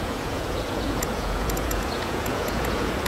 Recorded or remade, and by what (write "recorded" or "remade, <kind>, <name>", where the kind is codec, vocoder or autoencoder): remade, vocoder, Vocos